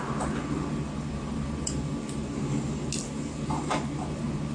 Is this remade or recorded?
recorded